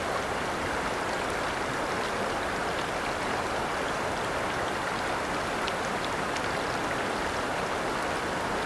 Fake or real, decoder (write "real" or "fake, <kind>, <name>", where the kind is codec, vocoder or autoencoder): real